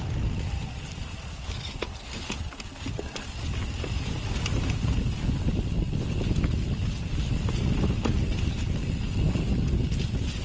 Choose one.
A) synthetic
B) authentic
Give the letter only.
B